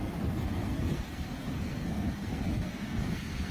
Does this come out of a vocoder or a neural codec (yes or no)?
yes